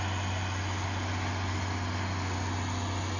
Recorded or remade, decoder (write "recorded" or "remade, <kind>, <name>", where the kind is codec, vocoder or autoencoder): recorded